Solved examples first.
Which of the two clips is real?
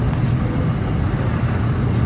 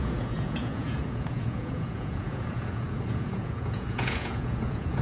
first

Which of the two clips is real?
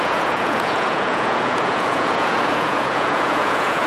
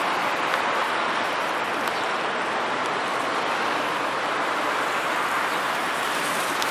second